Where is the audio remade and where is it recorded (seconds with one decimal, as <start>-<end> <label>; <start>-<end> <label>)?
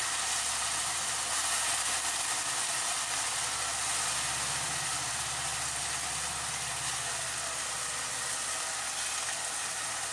0.0-10.1 recorded